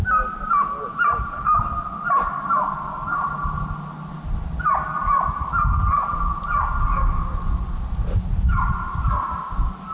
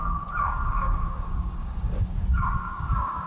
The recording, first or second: first